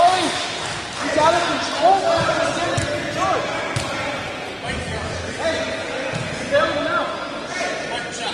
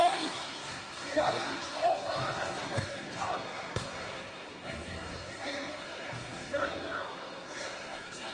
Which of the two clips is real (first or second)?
first